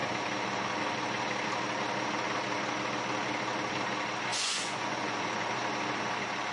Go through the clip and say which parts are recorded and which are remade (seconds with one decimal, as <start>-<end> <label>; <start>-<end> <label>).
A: 0.0-4.3 recorded; 4.3-5.5 remade; 5.5-6.5 recorded